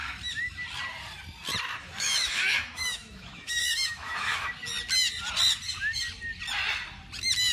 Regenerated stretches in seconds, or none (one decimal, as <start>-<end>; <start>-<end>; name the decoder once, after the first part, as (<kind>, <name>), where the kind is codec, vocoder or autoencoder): 1.8-4.5 (autoencoder, DAC-VAE)